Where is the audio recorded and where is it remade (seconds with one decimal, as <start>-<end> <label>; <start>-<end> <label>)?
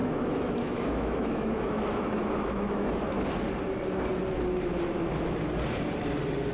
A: 0.0-2.9 remade; 2.9-6.5 recorded